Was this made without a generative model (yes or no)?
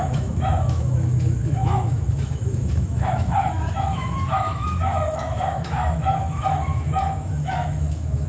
no